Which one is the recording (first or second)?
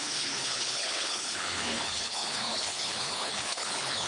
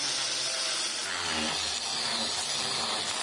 second